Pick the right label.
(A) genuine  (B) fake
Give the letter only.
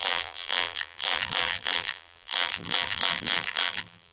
B